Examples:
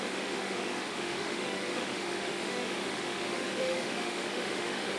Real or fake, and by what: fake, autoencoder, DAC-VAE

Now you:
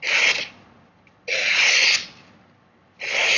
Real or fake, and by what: real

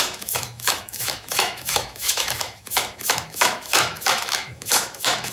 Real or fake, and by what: fake, autoencoder, DAC-VAE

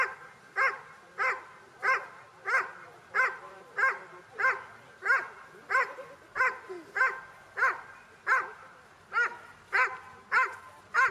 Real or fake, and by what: real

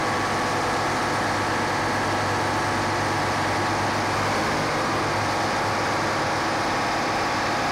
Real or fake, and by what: real